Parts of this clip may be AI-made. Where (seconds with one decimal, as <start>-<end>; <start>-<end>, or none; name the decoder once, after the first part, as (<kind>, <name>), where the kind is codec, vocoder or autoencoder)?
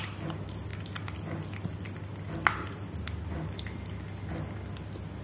none